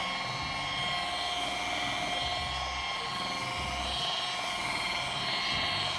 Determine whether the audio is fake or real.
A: real